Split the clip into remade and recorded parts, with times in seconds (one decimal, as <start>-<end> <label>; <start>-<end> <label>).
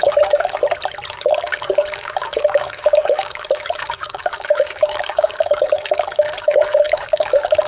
0.0-0.6 remade; 0.6-1.1 recorded; 1.1-7.7 remade